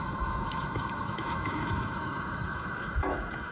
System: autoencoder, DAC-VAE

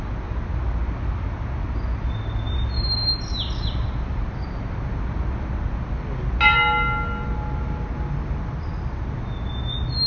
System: none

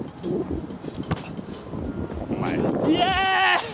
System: none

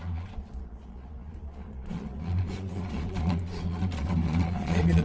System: vocoder, Vocos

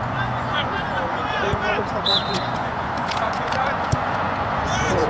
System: vocoder, Vocos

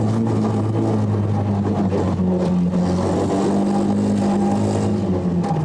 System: none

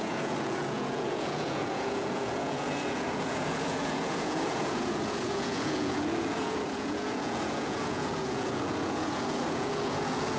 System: vocoder, Vocos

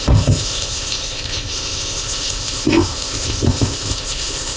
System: codec, ZipCodec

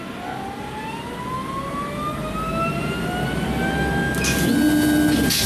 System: none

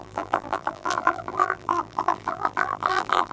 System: vocoder, BigVGAN v2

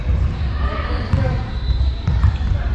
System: vocoder, BigVGAN v2